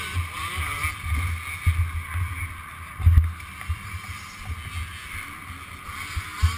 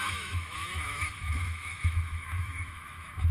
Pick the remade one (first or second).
second